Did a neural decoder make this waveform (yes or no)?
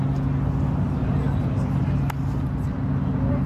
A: no